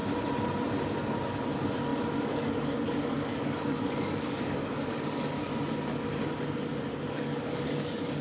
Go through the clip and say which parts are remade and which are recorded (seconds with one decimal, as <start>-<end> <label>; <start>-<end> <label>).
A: 0.0-1.3 recorded; 1.3-5.5 remade; 5.5-6.9 recorded; 6.9-8.2 remade